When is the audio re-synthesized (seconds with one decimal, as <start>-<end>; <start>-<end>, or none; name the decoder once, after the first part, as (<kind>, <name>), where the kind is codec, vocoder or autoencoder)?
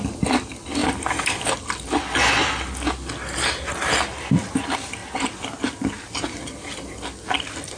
none